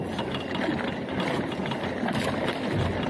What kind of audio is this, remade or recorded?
recorded